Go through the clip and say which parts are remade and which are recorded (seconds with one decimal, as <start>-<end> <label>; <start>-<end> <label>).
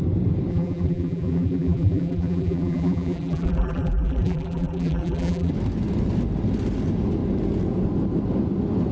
0.0-0.5 recorded; 0.5-5.5 remade; 5.5-8.9 recorded